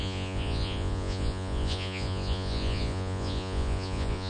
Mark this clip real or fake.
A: fake